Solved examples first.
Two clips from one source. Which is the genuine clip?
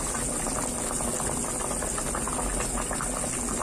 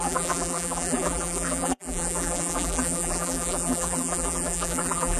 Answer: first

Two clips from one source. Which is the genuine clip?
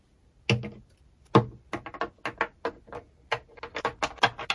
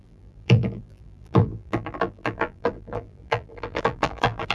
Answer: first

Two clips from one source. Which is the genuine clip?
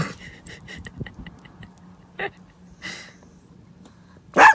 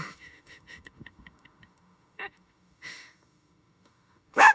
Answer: first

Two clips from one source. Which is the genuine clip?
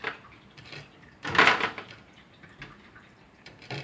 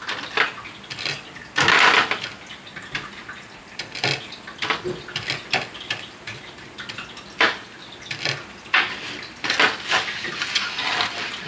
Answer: second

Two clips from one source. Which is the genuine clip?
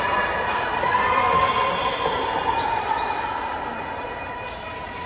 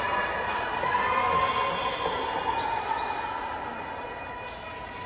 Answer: second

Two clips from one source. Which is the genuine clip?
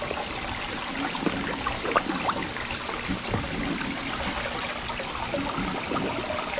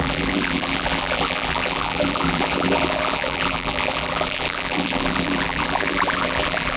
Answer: first